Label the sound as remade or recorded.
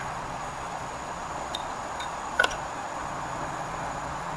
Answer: remade